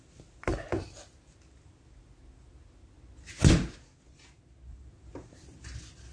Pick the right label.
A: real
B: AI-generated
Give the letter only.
A